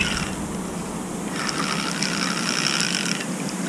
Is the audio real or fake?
real